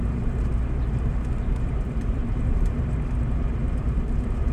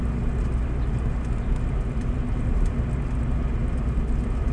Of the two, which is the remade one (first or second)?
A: first